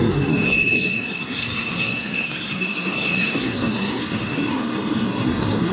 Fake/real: fake